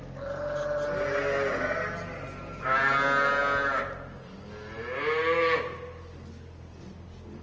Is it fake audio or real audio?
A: real